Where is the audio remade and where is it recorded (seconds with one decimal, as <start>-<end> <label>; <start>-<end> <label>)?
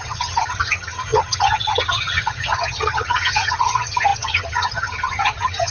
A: 0.0-5.7 remade